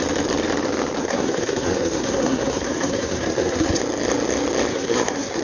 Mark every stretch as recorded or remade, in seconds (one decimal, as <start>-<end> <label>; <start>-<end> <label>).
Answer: 0.0-1.0 recorded; 1.0-3.8 remade; 3.8-4.7 recorded; 4.7-5.4 remade